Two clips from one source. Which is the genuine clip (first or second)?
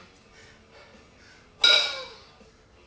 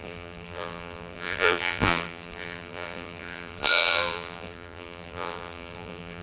first